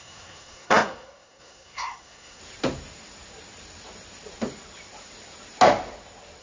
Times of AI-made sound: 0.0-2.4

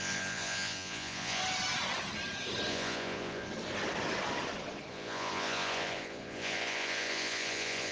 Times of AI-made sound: 0.0-1.4; 2.7-3.5; 4.9-7.9

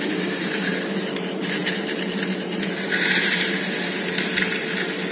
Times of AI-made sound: none

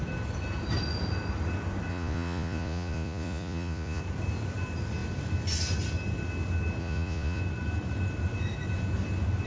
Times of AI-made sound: 1.9-4.0; 6.8-7.4

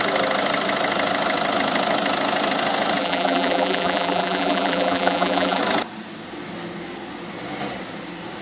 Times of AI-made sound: 3.0-5.6

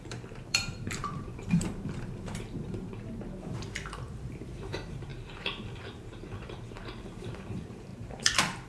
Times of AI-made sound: 0.0-8.7